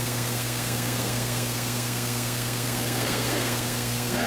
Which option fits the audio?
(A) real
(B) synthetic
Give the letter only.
B